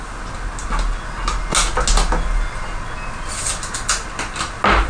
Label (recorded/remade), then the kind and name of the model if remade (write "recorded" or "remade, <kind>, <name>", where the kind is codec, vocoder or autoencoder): recorded